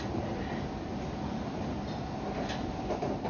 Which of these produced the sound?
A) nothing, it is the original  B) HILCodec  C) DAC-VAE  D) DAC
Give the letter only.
A